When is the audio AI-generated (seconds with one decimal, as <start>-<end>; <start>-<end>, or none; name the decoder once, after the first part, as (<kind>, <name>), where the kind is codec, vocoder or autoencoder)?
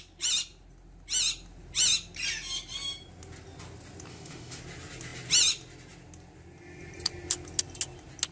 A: 4.1-4.6 (autoencoder, DAC-VAE)